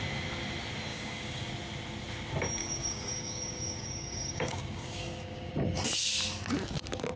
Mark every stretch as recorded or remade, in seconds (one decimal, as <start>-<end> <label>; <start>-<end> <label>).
0.0-0.9 recorded; 0.9-1.5 remade; 1.5-2.6 recorded; 2.6-5.5 remade; 5.5-7.2 recorded